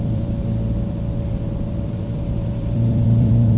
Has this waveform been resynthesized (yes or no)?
yes